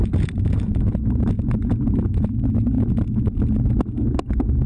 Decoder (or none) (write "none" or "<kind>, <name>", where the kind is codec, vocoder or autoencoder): none